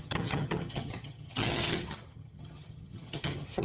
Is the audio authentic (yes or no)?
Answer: no